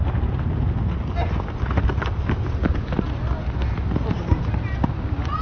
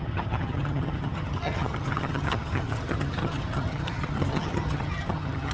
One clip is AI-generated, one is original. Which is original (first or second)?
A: first